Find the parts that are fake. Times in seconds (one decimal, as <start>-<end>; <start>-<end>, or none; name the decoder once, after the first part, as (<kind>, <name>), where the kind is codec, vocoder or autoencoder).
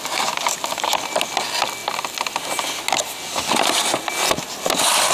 none